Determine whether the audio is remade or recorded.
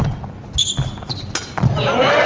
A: recorded